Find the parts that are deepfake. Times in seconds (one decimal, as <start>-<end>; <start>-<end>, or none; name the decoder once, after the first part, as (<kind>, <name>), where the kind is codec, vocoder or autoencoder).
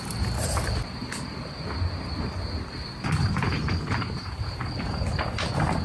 none